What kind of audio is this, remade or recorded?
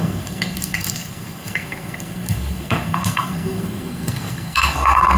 remade